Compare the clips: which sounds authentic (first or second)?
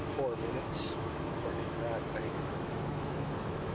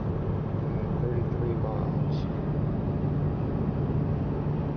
second